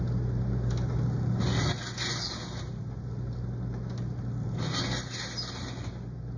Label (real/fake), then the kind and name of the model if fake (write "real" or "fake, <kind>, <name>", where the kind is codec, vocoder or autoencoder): real